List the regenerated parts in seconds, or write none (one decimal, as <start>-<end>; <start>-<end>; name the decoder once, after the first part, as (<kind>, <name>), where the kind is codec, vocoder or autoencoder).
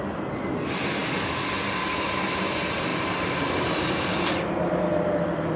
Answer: none